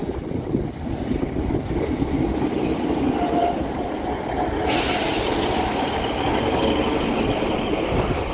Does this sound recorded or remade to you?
recorded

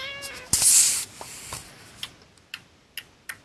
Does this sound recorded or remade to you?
recorded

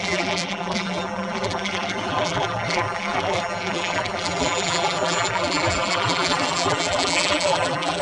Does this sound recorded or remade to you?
remade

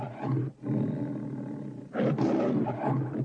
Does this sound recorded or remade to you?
recorded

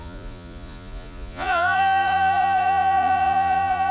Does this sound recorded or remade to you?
remade